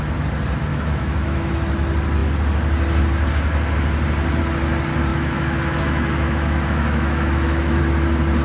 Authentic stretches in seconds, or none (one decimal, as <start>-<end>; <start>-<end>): 0.0-0.7; 1.5-5.1; 7.8-8.4

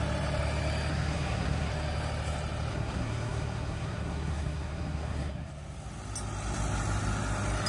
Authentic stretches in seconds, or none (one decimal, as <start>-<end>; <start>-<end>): 0.0-0.9; 1.7-2.7; 5.5-7.7

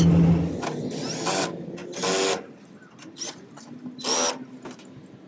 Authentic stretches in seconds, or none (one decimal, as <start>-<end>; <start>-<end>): 0.0-5.3

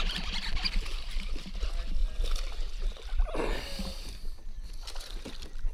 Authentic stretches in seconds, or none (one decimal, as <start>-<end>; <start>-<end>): 0.0-5.7